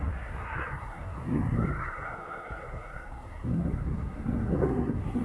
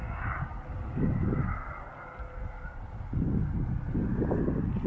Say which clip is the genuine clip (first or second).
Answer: second